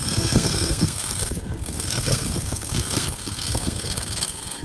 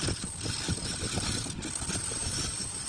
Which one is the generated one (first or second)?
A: first